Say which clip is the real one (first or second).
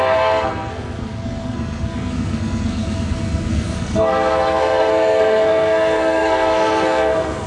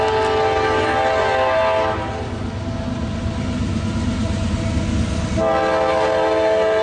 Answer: second